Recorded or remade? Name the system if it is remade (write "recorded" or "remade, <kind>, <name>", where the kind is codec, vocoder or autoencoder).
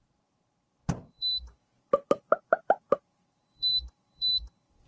remade, vocoder, BigVGAN v2